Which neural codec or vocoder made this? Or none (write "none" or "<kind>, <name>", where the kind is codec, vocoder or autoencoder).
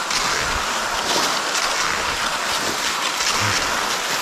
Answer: none